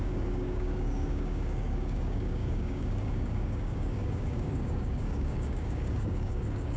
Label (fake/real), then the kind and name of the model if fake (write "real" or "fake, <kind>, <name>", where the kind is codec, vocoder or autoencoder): fake, codec, DAC